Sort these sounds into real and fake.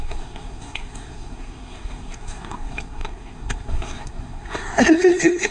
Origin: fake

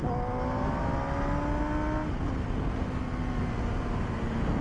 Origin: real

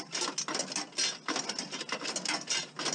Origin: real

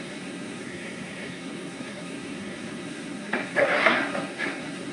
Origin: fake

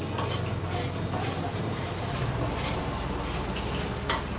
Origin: real